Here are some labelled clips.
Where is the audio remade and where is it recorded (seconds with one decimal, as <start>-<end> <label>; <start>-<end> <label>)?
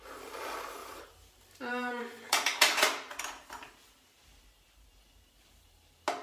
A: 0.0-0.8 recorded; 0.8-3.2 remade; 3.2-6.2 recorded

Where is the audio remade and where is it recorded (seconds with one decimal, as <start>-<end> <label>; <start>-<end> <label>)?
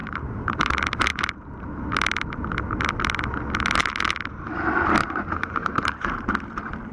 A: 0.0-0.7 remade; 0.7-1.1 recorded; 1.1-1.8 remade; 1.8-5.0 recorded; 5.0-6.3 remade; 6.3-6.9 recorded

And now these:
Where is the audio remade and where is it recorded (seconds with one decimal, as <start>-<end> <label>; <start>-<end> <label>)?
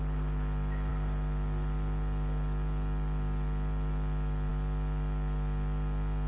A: 0.0-0.9 recorded; 0.9-4.5 remade; 4.5-6.3 recorded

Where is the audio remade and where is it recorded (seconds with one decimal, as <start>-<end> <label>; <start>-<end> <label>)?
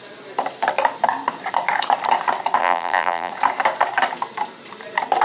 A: 0.0-2.6 recorded; 2.6-3.3 remade; 3.3-5.2 recorded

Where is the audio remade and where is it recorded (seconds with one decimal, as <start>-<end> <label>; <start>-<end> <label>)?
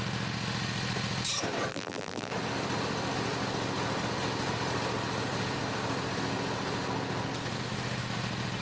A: 0.0-1.7 recorded; 1.7-2.3 remade; 2.3-8.6 recorded